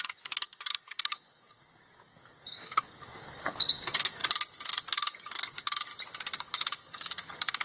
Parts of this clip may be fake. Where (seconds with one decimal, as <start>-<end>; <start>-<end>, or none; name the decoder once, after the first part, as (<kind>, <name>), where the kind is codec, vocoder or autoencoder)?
0.0-4.2 (codec, DAC); 4.9-5.9; 6.4-7.6